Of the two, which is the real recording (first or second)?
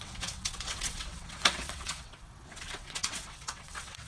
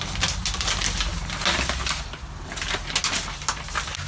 second